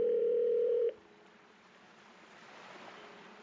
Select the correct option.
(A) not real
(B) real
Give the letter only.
A